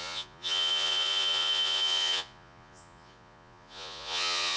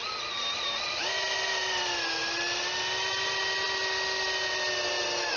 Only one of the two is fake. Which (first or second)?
first